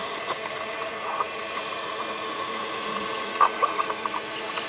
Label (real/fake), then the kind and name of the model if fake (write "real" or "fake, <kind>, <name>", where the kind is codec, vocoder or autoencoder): fake, vocoder, Vocos